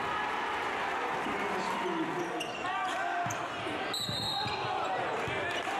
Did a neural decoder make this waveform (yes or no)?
no